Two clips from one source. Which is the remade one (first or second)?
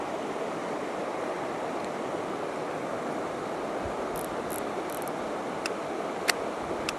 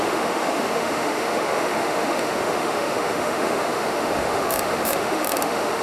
second